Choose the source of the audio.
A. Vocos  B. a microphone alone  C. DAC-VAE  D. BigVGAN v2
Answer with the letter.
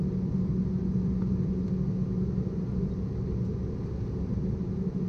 B